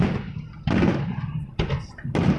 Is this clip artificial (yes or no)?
no